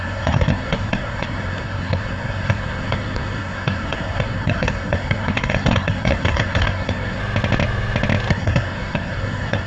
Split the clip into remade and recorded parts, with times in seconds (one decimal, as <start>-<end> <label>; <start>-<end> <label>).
0.0-7.2 remade; 7.2-8.3 recorded; 8.3-9.7 remade